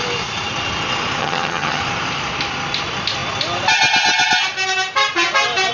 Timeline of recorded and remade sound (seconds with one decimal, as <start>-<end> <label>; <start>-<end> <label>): 0.0-1.2 recorded; 1.2-1.8 remade; 1.8-5.7 recorded